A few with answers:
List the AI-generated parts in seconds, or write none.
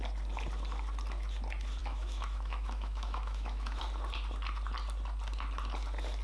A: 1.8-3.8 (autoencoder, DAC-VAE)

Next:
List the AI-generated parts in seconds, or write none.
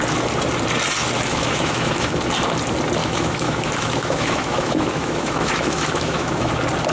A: 1.3-2.2 (autoencoder, DAC-VAE); 3.0-6.5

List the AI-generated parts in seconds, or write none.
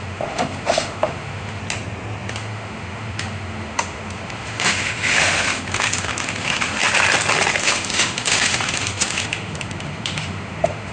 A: 0.0-1.6 (autoencoder, DAC-VAE); 2.3-6.8; 7.6-10.9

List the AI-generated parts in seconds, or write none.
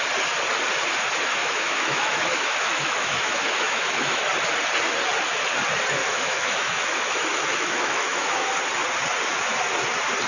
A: 1.4-4.2 (autoencoder, DAC-VAE); 6.0-8.5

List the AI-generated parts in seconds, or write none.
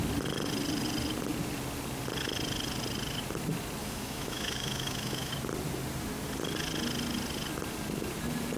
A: 3.8-5.3 (autoencoder, DAC-VAE)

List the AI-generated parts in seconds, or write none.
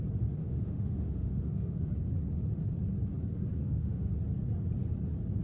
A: 0.4-1.9 (autoencoder, DAC-VAE); 3.6-4.1